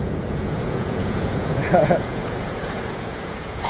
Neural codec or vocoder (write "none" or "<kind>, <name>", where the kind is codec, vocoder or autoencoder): vocoder, Vocos